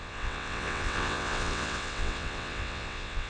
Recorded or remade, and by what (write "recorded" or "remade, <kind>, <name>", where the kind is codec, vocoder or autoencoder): remade, vocoder, WaveNeXt